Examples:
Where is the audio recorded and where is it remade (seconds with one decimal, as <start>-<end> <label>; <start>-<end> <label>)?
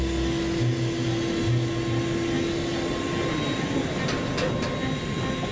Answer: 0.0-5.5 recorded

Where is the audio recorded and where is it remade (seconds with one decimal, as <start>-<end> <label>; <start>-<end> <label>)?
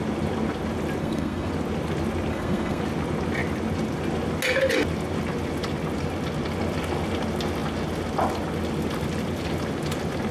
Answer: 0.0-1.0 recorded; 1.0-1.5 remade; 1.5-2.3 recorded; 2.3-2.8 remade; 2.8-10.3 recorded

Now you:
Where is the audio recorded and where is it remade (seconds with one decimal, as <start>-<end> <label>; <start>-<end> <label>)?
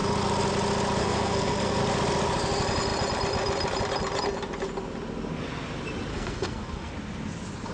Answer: 0.0-1.0 recorded; 1.0-1.8 remade; 1.8-6.1 recorded; 6.1-6.9 remade; 6.9-7.7 recorded